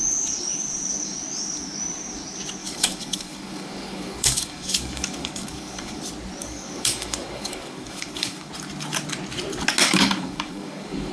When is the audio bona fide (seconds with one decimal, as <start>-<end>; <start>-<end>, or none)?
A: 0.0-2.6; 6.0-6.4; 8.5-9.8